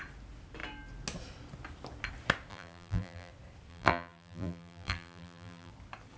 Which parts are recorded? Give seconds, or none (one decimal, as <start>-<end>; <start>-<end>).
0.0-2.5; 3.3-3.7; 5.7-6.2